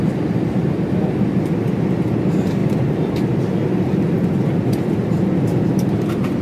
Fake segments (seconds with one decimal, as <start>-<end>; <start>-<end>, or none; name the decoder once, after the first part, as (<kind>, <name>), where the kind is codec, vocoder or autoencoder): 2.6-6.4 (vocoder, BigVGAN v2)

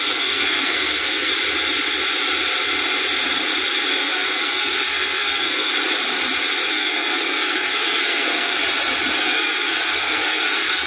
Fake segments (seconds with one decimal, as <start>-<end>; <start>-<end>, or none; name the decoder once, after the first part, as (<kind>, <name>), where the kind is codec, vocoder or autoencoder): 0.0-1.3 (codec, SNAC); 3.9-5.7; 6.7-8.6; 9.2-10.9